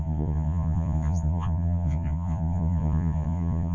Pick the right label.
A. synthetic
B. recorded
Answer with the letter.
A